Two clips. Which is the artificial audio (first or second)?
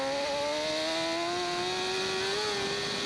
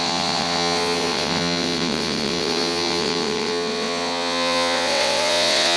second